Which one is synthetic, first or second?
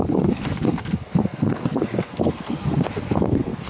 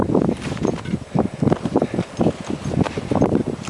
first